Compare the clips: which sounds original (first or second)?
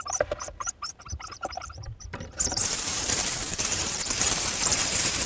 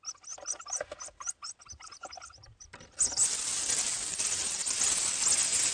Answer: second